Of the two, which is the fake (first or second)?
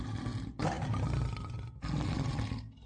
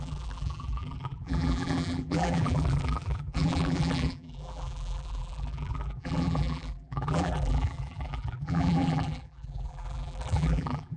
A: second